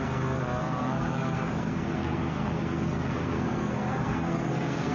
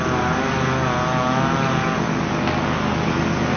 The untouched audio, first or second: second